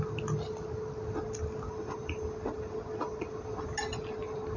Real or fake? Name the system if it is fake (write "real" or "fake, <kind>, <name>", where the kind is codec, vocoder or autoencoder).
real